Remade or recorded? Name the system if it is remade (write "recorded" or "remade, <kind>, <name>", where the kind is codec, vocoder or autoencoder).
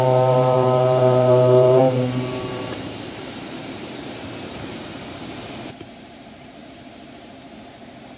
remade, vocoder, BigVGAN v2